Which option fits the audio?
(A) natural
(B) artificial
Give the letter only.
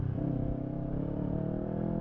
A